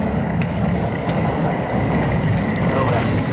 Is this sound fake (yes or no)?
yes